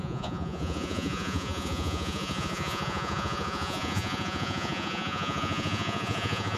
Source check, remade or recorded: remade